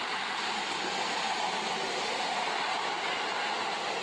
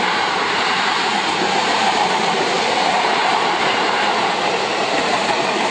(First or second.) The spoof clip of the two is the second